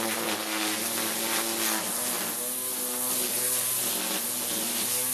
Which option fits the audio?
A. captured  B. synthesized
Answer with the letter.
A